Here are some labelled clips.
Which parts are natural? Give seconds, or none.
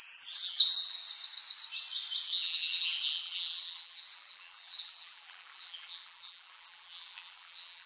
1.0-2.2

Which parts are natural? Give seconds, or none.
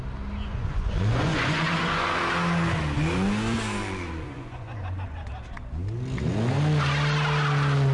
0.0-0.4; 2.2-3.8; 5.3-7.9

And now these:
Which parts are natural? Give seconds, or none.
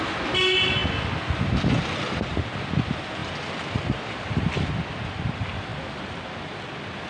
0.0-7.1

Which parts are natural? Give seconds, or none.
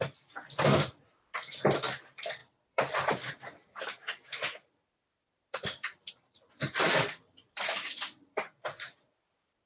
none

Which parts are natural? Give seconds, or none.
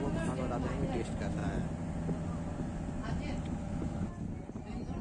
0.0-5.0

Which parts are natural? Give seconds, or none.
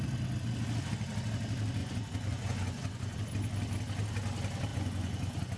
0.0-1.8; 3.2-4.7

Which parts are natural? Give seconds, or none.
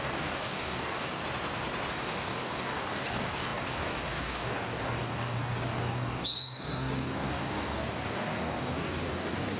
1.2-1.9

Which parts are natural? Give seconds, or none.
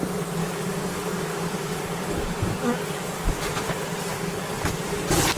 0.0-0.4; 3.3-4.1; 4.8-5.4